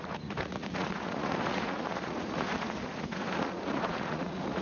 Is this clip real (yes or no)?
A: no